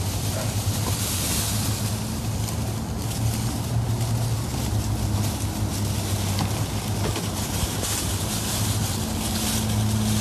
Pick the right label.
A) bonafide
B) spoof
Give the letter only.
A